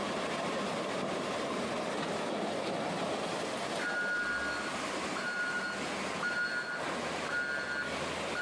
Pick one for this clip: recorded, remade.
recorded